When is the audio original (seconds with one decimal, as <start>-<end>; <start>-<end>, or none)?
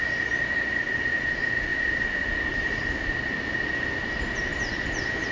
0.0-1.7; 2.9-4.5